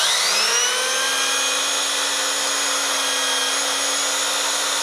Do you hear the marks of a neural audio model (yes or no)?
no